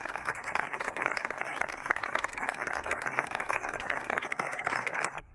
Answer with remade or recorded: remade